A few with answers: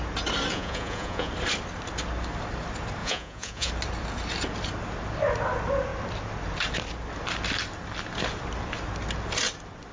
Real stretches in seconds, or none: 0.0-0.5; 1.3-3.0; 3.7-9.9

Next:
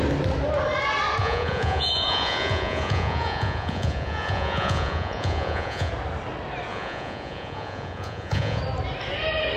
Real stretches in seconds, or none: 0.0-1.2; 5.9-6.7; 8.6-9.6